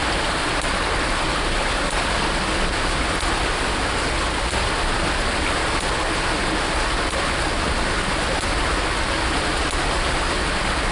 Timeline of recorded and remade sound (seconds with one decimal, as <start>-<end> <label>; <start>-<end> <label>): 0.0-10.9 recorded